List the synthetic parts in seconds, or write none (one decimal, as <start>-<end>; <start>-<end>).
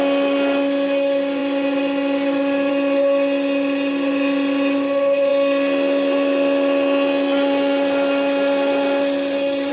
none